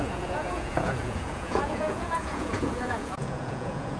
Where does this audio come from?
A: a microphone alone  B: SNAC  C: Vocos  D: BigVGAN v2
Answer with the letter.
C